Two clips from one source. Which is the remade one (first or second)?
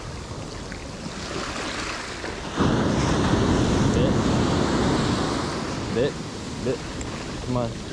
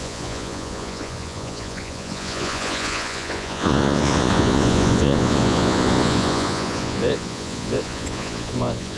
second